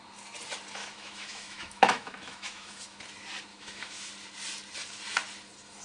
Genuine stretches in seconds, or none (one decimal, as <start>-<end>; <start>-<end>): 0.0-0.8; 3.0-3.5; 4.1-5.8